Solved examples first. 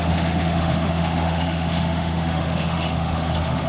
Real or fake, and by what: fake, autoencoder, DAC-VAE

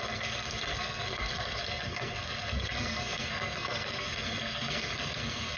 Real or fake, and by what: fake, codec, SNAC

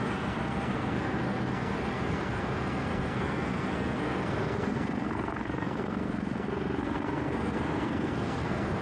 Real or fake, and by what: fake, codec, SNAC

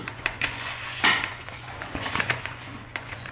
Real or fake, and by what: fake, vocoder, Vocos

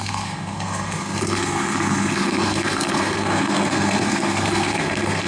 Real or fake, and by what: fake, codec, SNAC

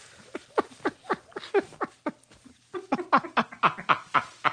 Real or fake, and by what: real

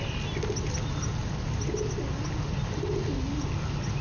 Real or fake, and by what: real